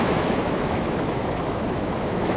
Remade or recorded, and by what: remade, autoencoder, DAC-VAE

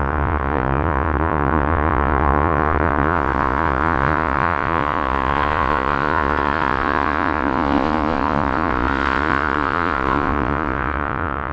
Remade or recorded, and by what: remade, vocoder, Vocos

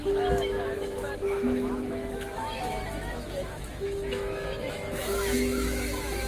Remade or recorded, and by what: remade, autoencoder, DAC-VAE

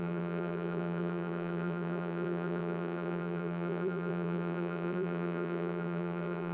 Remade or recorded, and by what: remade, vocoder, BigVGAN v2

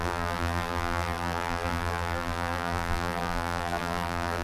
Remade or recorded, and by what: remade, vocoder, BigVGAN v2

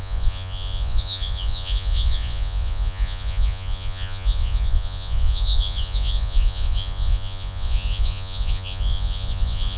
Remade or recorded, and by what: remade, vocoder, Vocos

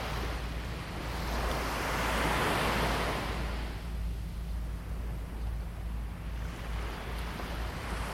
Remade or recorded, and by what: recorded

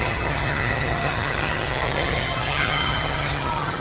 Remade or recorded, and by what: remade, vocoder, HiFi-GAN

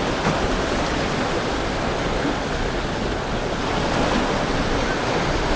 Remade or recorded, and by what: recorded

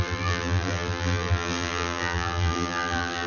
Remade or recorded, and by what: remade, vocoder, BigVGAN v2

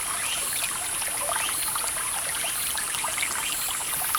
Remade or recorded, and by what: recorded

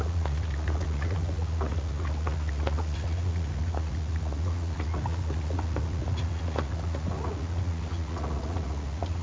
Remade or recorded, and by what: remade, vocoder, Vocos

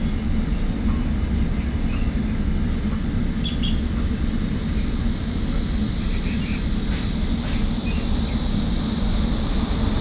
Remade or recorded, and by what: recorded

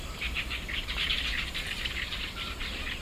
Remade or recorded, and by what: remade, vocoder, BigVGAN v2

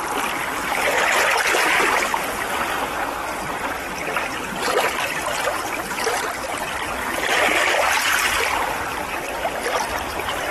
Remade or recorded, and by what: recorded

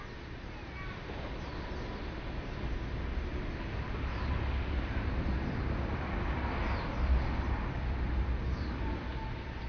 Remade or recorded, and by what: recorded